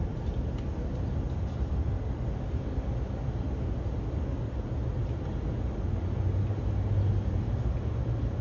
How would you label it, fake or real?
real